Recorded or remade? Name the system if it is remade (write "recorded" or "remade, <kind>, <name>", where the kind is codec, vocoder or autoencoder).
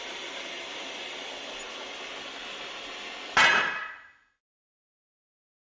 recorded